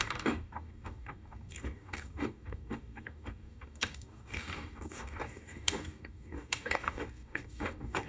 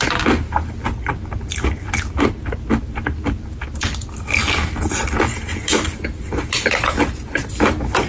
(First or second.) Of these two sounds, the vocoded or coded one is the first